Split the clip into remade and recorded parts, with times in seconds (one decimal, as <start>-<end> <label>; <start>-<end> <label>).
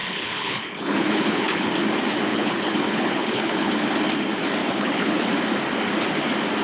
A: 0.0-1.7 remade; 1.7-2.3 recorded; 2.3-3.7 remade; 3.7-4.6 recorded; 4.6-5.3 remade; 5.3-6.6 recorded